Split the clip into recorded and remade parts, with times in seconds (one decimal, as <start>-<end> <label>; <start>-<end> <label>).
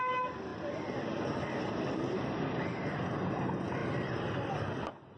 0.0-5.2 recorded